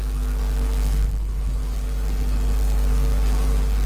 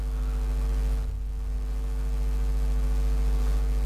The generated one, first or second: first